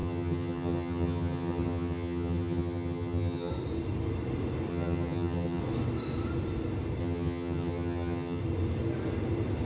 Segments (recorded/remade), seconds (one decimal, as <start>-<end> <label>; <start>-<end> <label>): 0.0-3.5 remade; 3.5-4.7 recorded; 4.7-5.6 remade; 5.6-7.0 recorded; 7.0-8.4 remade; 8.4-9.6 recorded